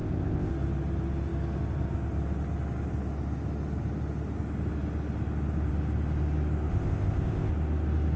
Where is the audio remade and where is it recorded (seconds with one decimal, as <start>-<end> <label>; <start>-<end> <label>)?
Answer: 0.0-0.5 remade; 0.5-6.7 recorded; 6.7-7.5 remade; 7.5-8.2 recorded